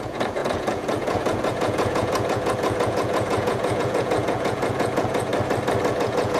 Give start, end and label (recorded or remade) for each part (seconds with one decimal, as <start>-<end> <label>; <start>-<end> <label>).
0.0-5.3 remade; 5.3-5.9 recorded; 5.9-6.4 remade